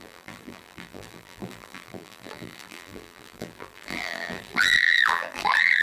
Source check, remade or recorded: remade